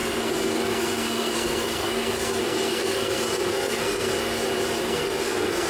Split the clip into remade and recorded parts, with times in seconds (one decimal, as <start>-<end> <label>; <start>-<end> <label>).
0.0-4.1 remade; 4.1-4.8 recorded; 4.8-5.7 remade